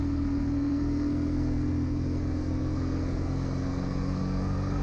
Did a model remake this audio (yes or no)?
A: yes